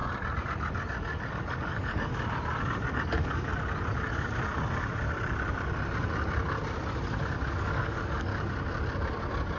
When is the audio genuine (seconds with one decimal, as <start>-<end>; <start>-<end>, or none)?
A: 0.0-1.3; 2.1-2.9; 3.5-7.5; 8.3-9.6